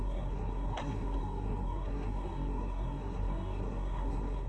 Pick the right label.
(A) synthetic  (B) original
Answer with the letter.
A